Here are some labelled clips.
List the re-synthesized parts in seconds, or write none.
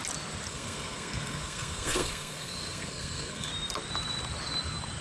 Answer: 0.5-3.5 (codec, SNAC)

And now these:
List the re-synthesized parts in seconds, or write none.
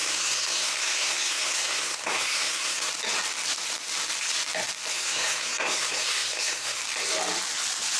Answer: 0.0-2.9 (codec, SNAC); 4.9-6.8